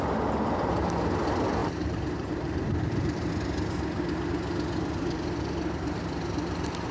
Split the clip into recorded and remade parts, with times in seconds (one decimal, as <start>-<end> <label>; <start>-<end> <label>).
0.0-1.6 recorded; 1.6-3.3 remade; 3.3-6.9 recorded